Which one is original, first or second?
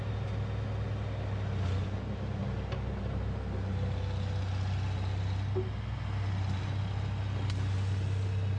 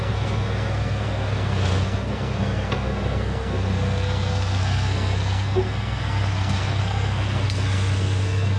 first